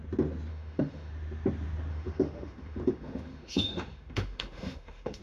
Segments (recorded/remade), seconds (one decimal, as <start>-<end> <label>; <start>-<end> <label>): 0.0-0.5 recorded; 0.5-1.1 remade; 1.1-1.9 recorded; 1.9-5.2 remade